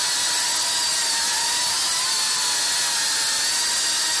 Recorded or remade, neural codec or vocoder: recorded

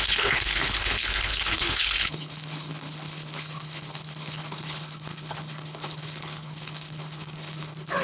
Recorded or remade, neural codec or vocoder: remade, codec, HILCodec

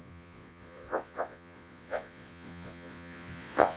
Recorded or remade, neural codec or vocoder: remade, vocoder, Vocos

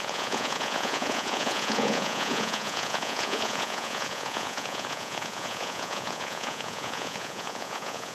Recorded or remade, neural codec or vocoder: remade, vocoder, Vocos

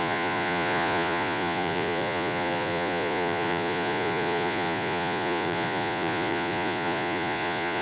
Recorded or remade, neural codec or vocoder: remade, vocoder, Vocos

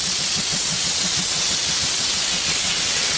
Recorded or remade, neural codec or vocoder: remade, vocoder, WaveNeXt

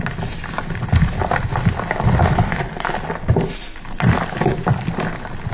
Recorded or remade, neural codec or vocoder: recorded